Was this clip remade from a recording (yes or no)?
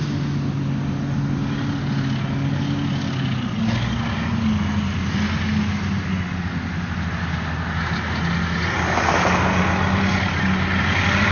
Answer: no